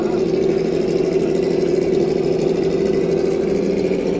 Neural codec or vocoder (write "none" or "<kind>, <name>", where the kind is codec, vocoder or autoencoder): none